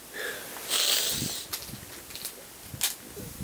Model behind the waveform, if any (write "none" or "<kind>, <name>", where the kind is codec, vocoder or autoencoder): none